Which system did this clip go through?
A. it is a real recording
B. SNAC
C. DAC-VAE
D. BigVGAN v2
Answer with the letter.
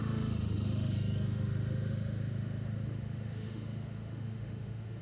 C